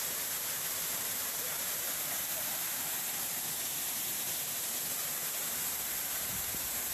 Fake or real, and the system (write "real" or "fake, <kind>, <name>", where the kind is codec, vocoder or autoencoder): fake, vocoder, BigVGAN v2